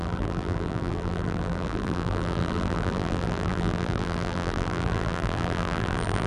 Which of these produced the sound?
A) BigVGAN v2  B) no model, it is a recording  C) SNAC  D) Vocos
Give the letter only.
A